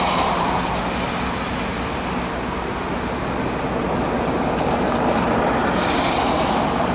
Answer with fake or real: real